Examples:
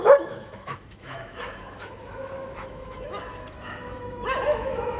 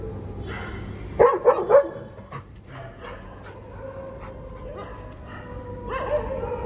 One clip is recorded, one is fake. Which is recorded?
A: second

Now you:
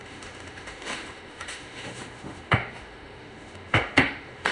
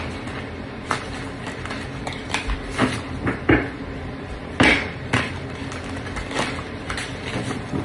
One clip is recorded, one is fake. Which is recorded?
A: second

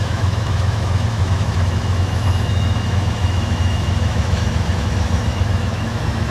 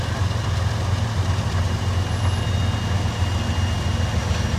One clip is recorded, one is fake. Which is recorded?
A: second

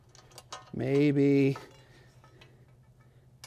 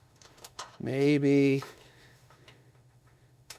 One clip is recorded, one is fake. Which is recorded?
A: first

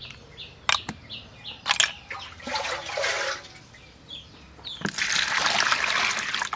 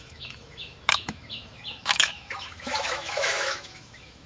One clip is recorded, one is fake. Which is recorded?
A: first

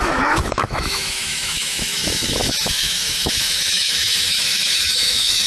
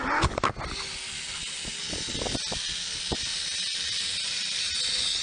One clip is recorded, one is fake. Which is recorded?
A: second